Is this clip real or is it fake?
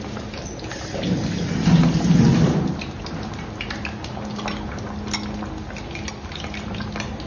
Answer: real